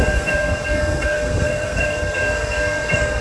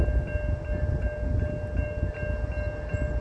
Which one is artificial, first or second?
first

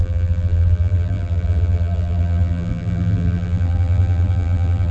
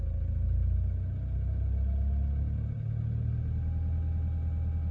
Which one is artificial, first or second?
first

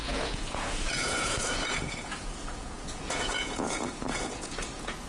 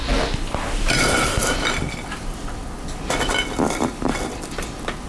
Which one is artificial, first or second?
first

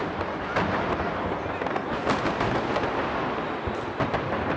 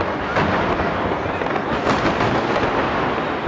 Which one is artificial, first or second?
second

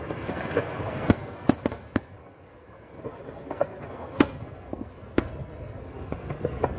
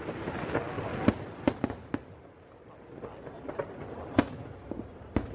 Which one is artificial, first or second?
first